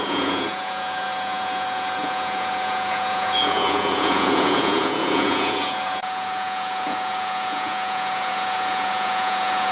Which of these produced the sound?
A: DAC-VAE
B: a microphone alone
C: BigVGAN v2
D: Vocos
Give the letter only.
D